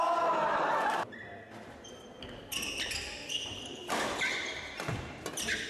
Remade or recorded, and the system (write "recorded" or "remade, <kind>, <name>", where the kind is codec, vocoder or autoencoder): recorded